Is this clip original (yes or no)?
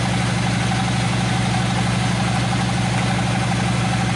yes